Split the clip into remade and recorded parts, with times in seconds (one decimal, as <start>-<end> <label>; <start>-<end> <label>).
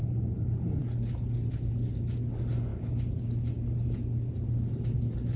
0.0-5.4 recorded